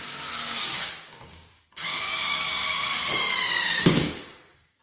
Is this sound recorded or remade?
remade